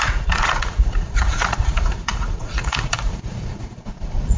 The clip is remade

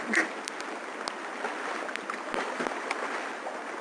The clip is recorded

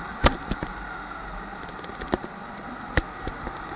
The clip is recorded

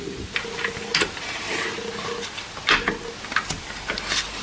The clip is recorded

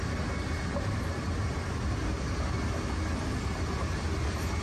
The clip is recorded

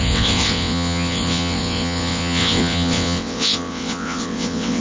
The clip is remade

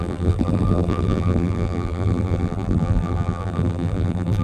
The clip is remade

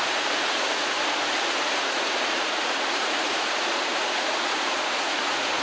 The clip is remade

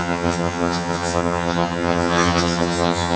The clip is remade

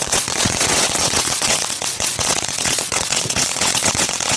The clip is remade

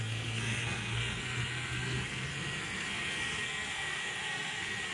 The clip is remade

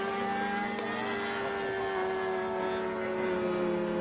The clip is recorded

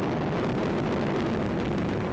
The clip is recorded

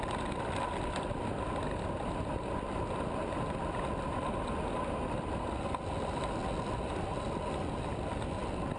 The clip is recorded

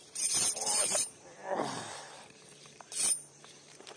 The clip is remade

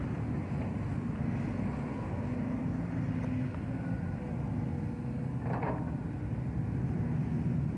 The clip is recorded